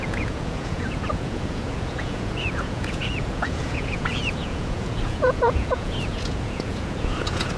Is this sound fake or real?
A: fake